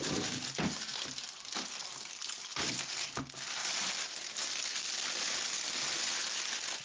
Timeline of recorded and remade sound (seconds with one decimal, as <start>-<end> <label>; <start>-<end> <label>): 0.0-3.6 remade; 3.6-4.3 recorded; 4.3-6.8 remade